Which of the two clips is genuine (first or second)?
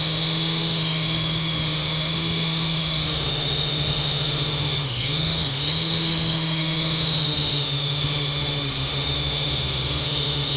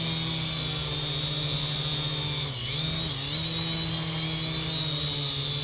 second